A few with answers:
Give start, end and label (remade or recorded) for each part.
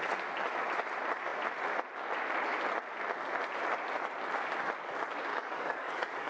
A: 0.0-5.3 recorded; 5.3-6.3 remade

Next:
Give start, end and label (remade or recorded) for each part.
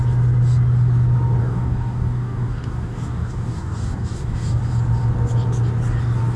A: 0.0-1.4 recorded; 1.4-4.6 remade; 4.6-6.4 recorded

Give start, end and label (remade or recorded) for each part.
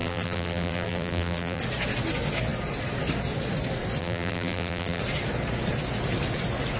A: 0.0-1.6 remade; 1.6-4.0 recorded; 4.0-5.0 remade; 5.0-6.8 recorded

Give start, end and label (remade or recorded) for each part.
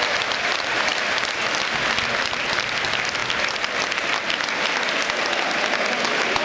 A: 0.0-6.4 recorded